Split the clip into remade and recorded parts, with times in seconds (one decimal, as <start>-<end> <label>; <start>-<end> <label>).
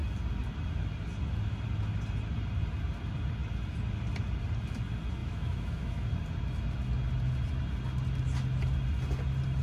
0.0-5.2 recorded; 5.2-6.1 remade; 6.1-9.6 recorded